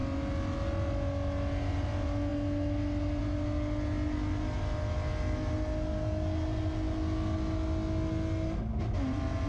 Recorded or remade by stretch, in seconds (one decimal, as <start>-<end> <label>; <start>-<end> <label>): 0.0-9.5 recorded